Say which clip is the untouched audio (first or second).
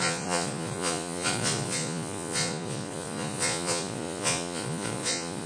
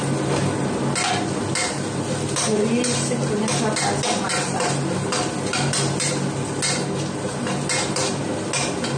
second